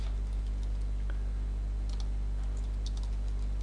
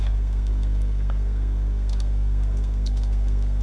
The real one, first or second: first